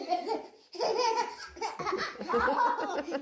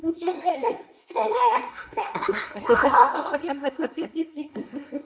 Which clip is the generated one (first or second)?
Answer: second